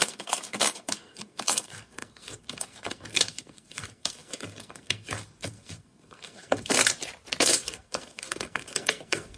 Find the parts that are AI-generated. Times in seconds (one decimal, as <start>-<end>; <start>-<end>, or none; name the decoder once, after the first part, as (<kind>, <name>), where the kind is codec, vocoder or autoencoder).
0.0-6.8 (codec, SNAC); 7.4-9.4